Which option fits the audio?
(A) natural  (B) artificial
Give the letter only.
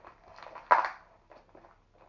A